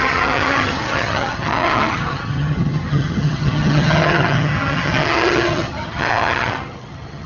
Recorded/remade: remade